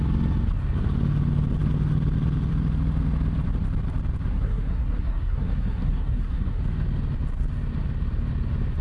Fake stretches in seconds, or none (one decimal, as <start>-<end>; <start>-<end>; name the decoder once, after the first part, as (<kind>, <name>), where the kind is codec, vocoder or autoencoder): 4.3-6.6 (codec, SNAC)